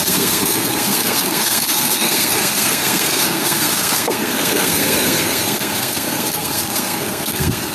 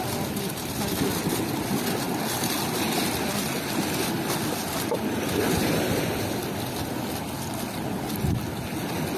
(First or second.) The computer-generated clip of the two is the first